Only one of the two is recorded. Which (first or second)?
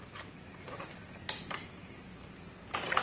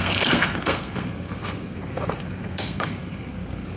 first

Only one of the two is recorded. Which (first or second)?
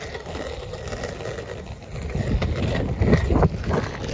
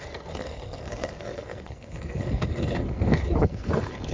first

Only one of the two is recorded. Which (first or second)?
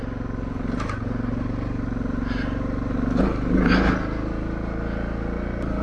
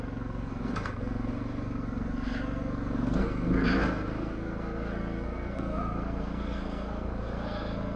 first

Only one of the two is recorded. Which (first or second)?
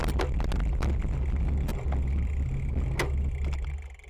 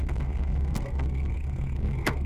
first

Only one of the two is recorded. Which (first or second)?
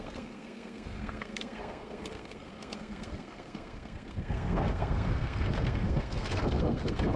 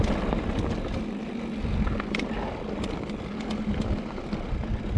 second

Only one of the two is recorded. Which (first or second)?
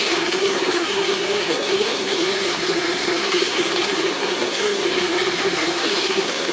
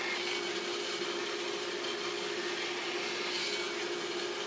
second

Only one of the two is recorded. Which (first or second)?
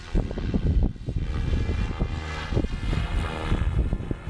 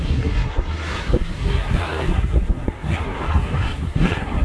first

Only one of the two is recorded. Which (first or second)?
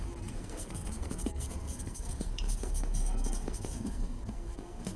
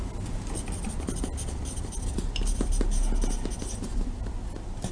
second